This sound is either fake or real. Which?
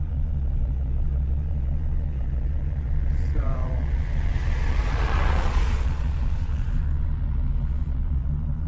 fake